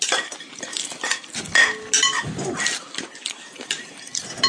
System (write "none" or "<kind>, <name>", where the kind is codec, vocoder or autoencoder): none